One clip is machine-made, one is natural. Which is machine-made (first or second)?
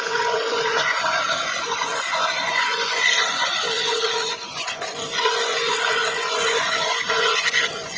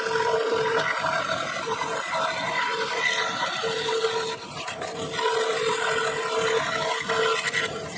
first